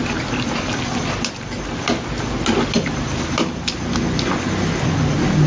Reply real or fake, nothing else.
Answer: real